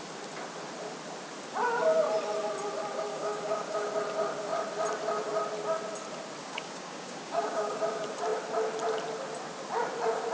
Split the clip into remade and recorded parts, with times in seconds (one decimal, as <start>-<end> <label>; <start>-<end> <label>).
0.0-3.1 recorded; 3.1-3.9 remade; 3.9-6.4 recorded; 6.4-7.8 remade; 7.8-10.3 recorded